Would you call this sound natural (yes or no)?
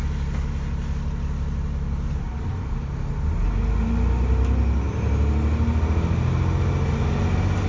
yes